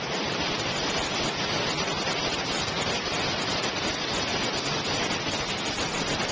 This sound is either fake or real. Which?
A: real